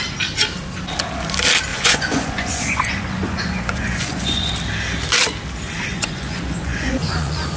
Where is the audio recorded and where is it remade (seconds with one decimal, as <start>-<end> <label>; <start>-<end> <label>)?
0.0-1.7 recorded; 1.7-4.5 remade; 4.5-5.9 recorded; 5.9-7.6 remade